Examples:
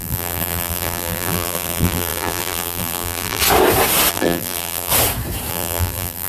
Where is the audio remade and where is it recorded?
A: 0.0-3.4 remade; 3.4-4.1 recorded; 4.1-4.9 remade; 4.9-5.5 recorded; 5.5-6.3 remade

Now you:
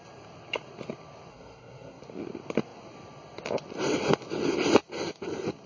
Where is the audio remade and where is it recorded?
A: 0.0-1.3 recorded; 1.3-2.0 remade; 2.0-5.7 recorded

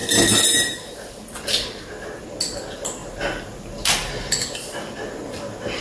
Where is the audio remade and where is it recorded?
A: 0.0-5.8 recorded

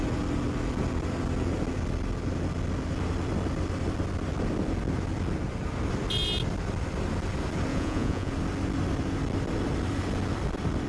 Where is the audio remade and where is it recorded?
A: 0.0-7.7 recorded; 7.7-8.3 remade; 8.3-10.9 recorded